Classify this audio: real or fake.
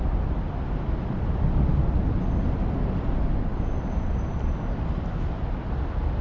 real